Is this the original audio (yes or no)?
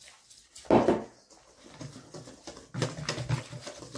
yes